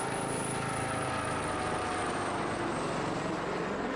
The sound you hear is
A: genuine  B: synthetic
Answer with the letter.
A